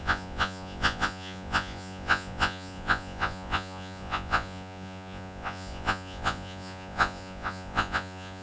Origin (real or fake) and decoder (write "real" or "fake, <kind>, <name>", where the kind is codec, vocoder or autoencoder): fake, vocoder, Vocos